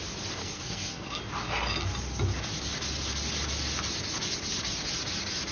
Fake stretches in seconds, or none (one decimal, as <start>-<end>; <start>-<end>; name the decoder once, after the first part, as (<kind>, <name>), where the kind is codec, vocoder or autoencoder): 0.4-1.2 (codec, SNAC)